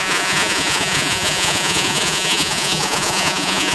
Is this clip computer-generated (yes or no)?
yes